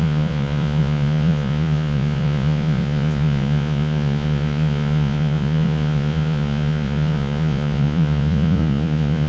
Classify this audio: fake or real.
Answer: fake